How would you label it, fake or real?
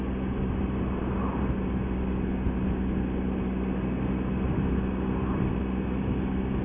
real